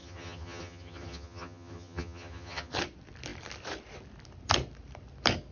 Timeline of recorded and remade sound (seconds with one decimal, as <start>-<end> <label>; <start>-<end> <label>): 0.0-2.7 remade; 2.7-5.5 recorded